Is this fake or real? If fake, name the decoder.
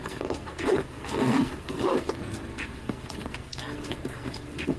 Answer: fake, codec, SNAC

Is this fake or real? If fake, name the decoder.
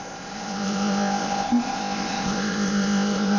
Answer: fake, codec, ZipCodec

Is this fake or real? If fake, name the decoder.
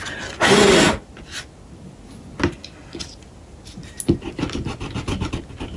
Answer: real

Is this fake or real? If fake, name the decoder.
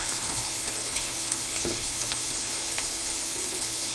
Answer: fake, codec, HILCodec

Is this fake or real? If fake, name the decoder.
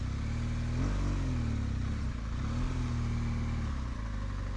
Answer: real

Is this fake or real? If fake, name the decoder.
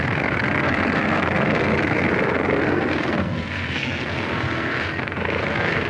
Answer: fake, codec, SNAC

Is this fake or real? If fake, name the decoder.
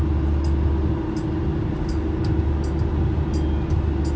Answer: real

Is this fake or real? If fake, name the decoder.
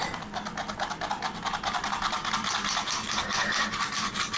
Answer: real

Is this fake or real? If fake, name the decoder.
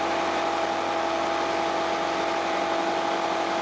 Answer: real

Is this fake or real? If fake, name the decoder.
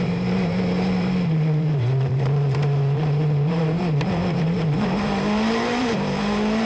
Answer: fake, vocoder, BigVGAN v2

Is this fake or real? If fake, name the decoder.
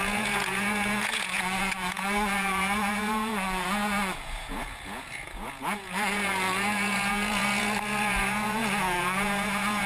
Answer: fake, vocoder, Vocos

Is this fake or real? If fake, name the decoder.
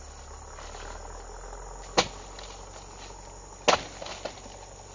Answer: real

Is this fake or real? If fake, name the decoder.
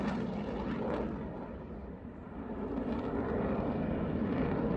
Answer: real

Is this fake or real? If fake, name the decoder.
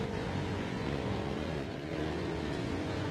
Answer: fake, vocoder, Vocos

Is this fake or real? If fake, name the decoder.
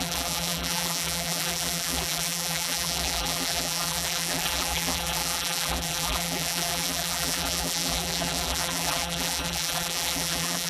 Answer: fake, vocoder, BigVGAN v2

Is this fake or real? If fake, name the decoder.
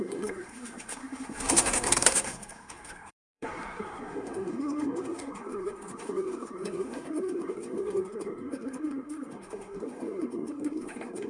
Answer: fake, codec, SNAC